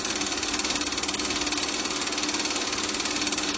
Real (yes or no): yes